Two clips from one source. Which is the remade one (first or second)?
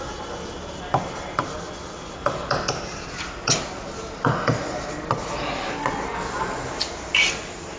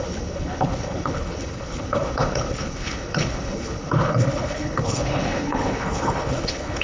second